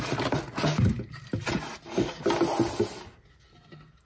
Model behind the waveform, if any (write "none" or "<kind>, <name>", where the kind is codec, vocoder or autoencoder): none